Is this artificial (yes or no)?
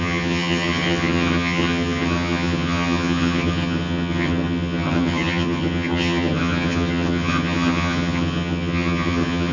yes